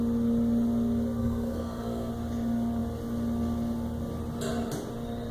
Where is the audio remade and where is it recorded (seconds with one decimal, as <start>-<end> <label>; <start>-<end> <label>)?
0.0-1.2 recorded; 1.2-2.1 remade; 2.1-5.3 recorded